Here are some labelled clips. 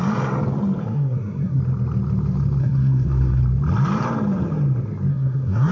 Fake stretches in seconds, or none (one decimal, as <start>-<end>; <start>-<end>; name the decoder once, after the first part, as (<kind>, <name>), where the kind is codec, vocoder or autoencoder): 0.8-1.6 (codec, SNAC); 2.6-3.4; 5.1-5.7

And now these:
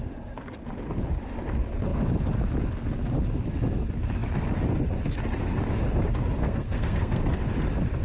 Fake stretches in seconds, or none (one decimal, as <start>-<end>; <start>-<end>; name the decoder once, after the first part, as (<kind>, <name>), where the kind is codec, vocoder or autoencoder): 6.4-7.2 (codec, SNAC)

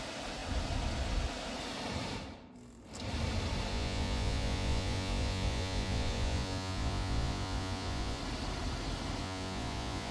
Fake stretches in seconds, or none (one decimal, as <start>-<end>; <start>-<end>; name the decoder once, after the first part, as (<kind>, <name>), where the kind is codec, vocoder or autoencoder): 3.7-8.2 (vocoder, Vocos); 9.2-10.1

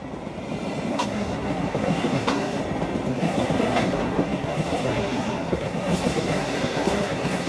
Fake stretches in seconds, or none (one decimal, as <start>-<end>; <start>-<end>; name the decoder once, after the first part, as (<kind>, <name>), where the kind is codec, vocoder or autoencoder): 0.9-2.6 (codec, SNAC); 3.1-7.5

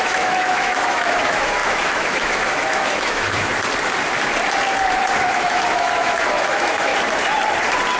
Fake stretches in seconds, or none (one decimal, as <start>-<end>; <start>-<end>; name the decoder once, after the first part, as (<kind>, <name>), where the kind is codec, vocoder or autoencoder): 0.0-3.5 (autoencoder, DAC-VAE); 5.3-6.9